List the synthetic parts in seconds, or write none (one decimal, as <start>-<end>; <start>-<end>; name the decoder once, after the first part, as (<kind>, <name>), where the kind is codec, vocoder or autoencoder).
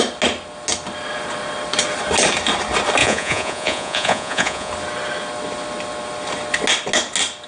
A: 3.0-4.7 (vocoder, Vocos)